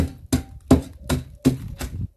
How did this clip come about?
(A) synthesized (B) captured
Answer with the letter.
B